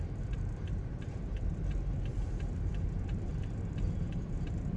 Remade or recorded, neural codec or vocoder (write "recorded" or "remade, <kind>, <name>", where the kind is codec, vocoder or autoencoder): remade, vocoder, BigVGAN v2